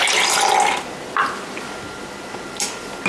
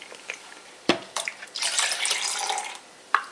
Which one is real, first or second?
first